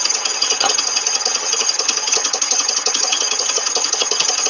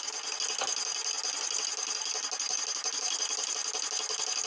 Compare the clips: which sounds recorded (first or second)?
second